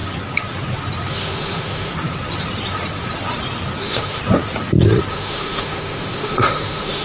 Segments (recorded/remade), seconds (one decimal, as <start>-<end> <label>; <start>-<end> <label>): 0.0-1.1 recorded; 1.1-1.9 remade; 1.9-3.8 recorded; 3.8-4.2 remade; 4.2-5.1 recorded; 5.1-7.0 remade